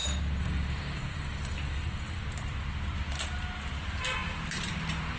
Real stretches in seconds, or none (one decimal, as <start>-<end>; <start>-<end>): 2.2-5.2